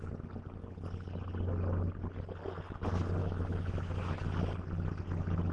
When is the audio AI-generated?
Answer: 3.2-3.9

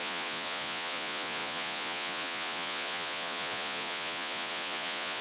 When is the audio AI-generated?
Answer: 0.0-5.2

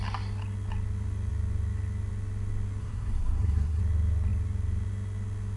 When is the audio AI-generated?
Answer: 2.8-3.8